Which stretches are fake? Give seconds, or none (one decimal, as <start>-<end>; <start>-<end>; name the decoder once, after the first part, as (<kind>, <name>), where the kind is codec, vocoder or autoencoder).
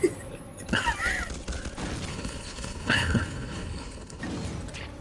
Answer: 2.1-4.2 (codec, HILCodec)